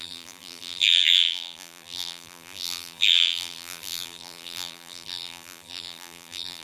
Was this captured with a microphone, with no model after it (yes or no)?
no